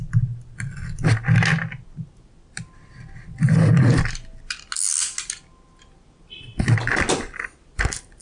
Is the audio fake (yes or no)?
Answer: no